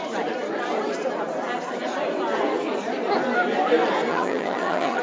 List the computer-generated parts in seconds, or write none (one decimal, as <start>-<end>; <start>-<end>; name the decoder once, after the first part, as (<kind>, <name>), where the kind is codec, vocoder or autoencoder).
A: 4.1-5.0 (vocoder, HiFi-GAN)